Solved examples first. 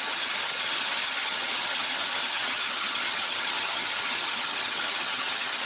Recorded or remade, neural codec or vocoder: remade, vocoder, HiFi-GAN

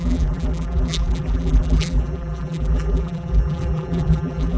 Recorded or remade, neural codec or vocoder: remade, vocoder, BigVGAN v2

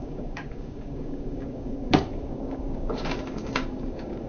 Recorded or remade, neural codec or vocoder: remade, codec, DAC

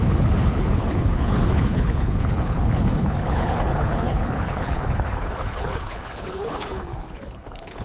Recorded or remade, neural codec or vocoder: remade, codec, HILCodec